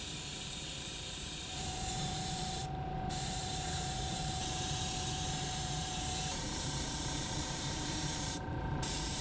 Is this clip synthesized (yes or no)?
yes